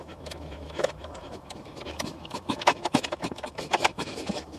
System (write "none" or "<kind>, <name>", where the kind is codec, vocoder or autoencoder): autoencoder, DAC-VAE